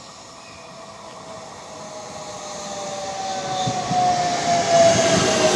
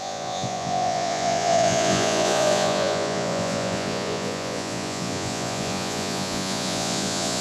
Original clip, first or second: first